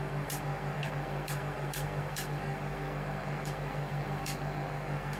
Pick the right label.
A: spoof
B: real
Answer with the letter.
A